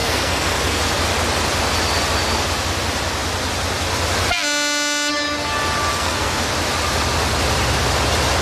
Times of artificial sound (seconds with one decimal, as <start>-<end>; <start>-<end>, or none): 0.0-0.8; 5.9-6.5